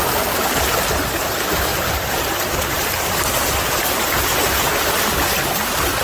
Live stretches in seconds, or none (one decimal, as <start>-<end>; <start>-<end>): 0.0-1.7; 3.1-6.0